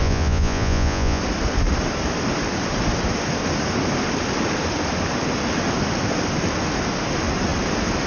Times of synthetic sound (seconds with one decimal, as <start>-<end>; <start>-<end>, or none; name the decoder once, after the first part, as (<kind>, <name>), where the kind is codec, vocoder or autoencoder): 0.0-1.2 (vocoder, Vocos)